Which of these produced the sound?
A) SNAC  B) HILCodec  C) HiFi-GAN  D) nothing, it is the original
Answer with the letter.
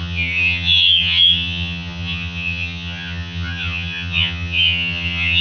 C